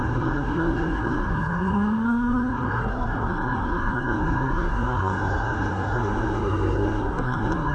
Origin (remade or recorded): remade